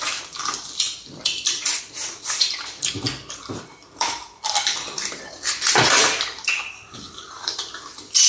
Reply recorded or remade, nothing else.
remade